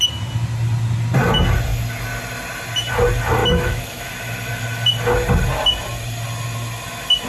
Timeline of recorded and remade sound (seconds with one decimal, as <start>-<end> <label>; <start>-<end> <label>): 0.0-3.4 recorded; 3.4-4.1 remade; 4.1-7.3 recorded